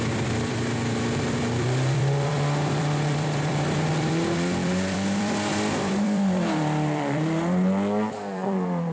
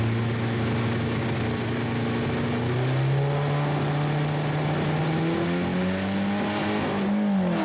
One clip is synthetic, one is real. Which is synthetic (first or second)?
first